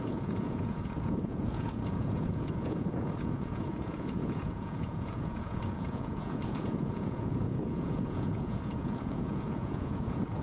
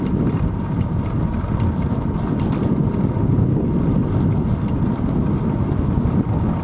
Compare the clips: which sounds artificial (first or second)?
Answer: first